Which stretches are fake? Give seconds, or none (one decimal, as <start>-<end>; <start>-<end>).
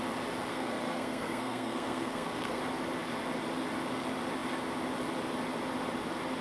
0.5-2.6